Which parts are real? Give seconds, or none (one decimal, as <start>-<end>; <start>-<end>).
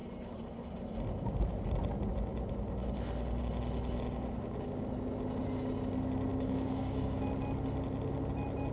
0.0-6.3; 7.2-8.7